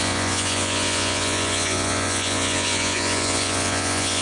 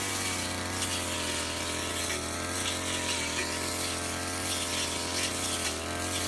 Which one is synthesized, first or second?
first